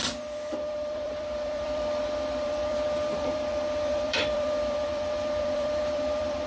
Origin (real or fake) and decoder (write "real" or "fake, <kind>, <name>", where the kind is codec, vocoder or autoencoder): fake, vocoder, BigVGAN v2